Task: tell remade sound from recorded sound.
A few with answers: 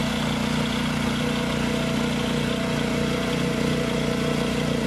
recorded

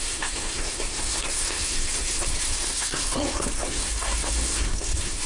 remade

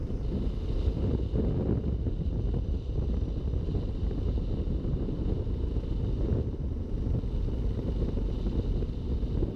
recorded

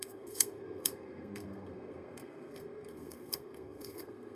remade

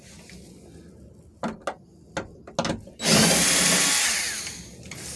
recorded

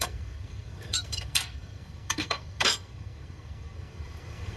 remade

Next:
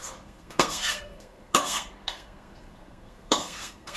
remade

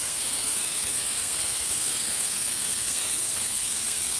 remade